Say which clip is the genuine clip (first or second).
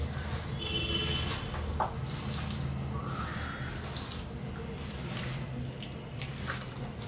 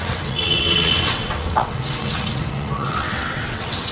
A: first